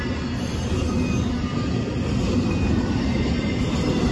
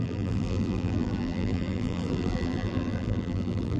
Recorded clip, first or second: first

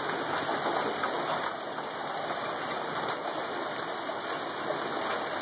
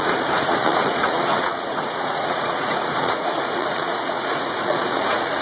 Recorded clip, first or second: first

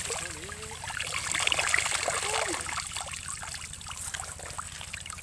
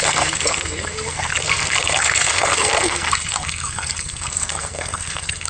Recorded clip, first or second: first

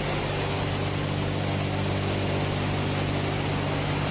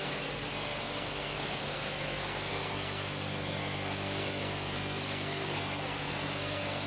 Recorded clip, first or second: first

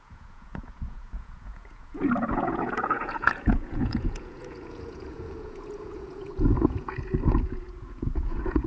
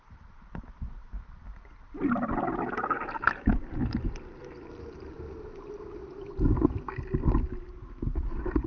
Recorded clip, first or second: second